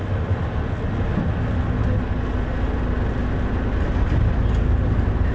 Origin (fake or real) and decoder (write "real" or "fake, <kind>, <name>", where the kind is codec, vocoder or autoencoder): real